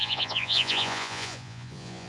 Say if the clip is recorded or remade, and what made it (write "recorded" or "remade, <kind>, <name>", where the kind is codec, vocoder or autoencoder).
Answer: remade, vocoder, Vocos